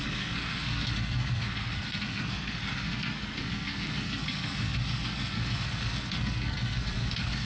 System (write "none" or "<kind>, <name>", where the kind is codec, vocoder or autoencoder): codec, SNAC